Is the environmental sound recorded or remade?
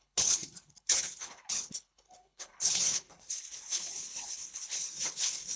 remade